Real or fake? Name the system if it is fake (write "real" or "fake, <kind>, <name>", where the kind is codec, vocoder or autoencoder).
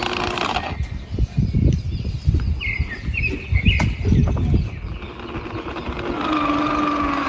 real